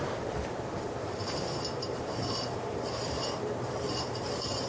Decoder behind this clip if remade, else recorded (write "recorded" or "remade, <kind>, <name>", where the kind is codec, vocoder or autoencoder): remade, vocoder, BigVGAN v2